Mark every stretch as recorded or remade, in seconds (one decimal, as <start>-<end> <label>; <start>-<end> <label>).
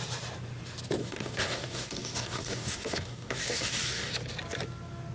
0.0-1.0 recorded; 1.0-4.1 remade; 4.1-5.1 recorded